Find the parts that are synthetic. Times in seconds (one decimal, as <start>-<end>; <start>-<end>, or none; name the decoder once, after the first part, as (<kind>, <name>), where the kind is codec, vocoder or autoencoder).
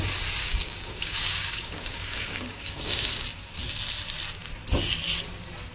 0.4-3.1 (codec, DAC)